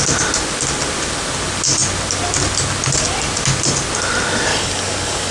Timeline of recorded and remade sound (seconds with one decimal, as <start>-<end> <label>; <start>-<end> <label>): 0.0-4.5 recorded; 4.5-5.3 remade